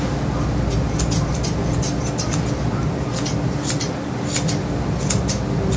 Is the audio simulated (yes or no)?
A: no